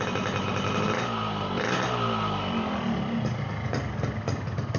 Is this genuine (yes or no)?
yes